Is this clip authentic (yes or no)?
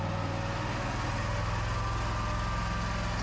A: yes